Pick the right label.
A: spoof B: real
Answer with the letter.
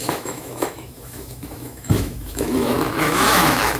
A